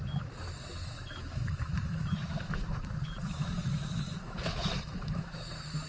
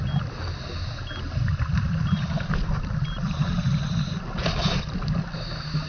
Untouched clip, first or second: second